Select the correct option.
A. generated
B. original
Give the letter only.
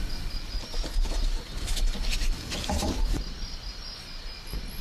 B